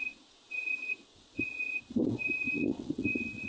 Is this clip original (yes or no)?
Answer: no